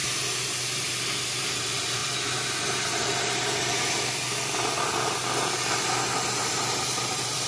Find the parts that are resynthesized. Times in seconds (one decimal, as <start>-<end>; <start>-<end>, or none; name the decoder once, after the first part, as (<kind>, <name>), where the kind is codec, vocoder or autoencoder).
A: 1.4-2.0 (vocoder, BigVGAN v2); 6.5-7.5